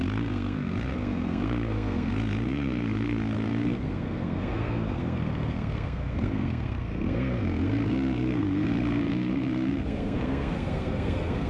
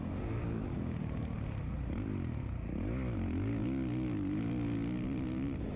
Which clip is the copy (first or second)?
first